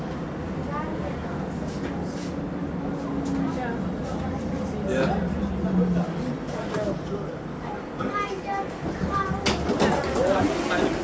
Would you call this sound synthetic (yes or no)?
no